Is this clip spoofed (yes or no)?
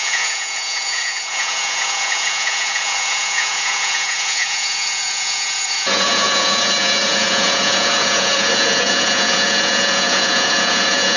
yes